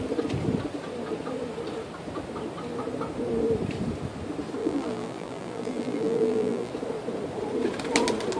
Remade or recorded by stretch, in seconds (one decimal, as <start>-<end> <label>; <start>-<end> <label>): 0.0-4.6 recorded; 4.6-6.7 remade; 6.7-8.4 recorded